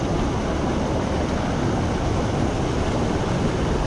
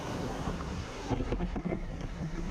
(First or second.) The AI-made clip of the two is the second